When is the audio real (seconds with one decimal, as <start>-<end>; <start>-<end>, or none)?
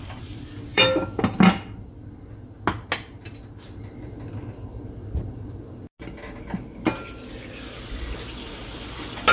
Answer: 0.0-0.7; 1.2-9.3